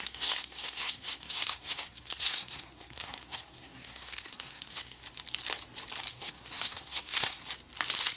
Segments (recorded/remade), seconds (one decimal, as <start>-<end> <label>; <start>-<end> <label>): 0.0-5.0 remade; 5.0-6.1 recorded; 6.1-7.4 remade; 7.4-8.2 recorded